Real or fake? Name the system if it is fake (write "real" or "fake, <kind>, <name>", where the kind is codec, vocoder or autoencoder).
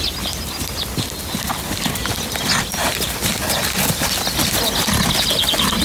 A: real